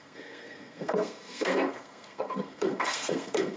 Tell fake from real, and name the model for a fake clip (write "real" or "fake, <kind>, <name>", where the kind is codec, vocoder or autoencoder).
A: fake, codec, SNAC